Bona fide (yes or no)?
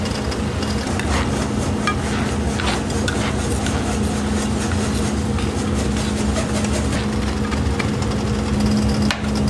yes